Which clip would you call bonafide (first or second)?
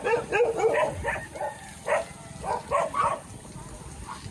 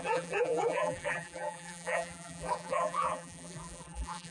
first